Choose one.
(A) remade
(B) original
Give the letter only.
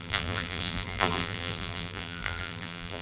A